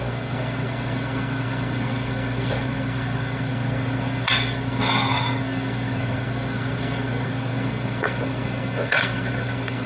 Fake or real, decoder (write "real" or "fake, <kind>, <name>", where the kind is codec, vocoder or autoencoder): fake, codec, SNAC